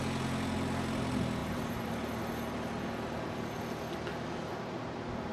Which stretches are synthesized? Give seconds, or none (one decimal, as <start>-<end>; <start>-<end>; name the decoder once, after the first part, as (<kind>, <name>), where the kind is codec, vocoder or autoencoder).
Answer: 1.4-2.2 (vocoder, BigVGAN v2)